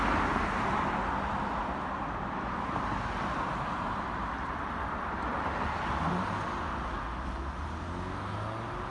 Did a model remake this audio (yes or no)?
no